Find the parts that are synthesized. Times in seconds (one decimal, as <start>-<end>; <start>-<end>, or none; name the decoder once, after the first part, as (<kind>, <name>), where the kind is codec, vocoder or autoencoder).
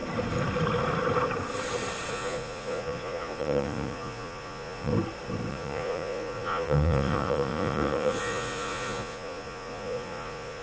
2.1-4.9 (vocoder, Vocos); 5.5-10.6